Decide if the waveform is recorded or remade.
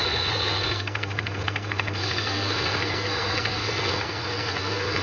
remade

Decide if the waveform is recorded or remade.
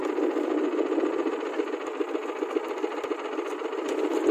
recorded